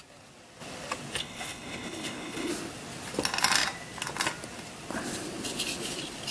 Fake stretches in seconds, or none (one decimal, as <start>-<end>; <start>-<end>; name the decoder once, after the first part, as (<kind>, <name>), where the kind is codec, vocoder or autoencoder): 1.2-2.5 (codec, HILCodec)

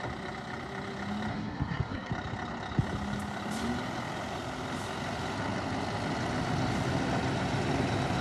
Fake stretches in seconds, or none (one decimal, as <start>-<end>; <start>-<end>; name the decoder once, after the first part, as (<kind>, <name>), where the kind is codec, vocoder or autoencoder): 1.3-2.1 (codec, SNAC)

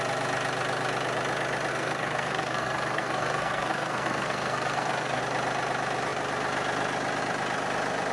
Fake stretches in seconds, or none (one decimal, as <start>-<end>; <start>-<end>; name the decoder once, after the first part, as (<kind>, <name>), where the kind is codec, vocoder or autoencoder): 1.7-5.2 (codec, SNAC)

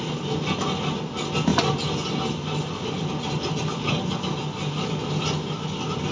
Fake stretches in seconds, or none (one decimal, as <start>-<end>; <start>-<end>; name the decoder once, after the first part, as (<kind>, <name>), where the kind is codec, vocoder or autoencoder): none

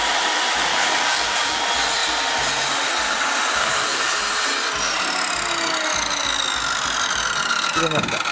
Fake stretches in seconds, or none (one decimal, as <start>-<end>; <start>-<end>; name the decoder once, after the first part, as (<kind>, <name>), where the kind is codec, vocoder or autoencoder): 0.7-1.6 (codec, DAC); 3.6-4.2

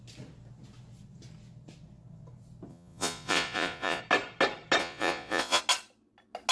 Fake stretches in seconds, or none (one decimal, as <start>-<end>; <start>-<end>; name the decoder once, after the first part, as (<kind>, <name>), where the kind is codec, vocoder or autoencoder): 2.7-4.0 (vocoder, Vocos); 4.8-5.6

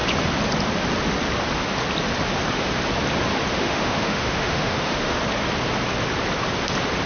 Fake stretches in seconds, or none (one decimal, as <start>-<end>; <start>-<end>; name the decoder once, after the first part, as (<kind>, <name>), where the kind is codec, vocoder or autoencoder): 3.5-5.2 (autoencoder, DAC-VAE)

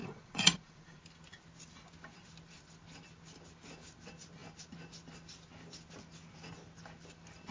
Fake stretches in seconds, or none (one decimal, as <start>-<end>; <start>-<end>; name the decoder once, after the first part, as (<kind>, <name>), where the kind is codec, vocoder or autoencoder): 0.0-1.0 (vocoder, Vocos)